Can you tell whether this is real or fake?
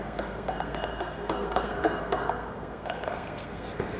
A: fake